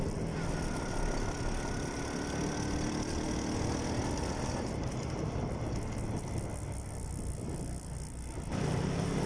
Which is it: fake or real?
real